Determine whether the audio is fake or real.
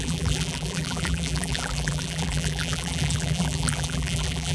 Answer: fake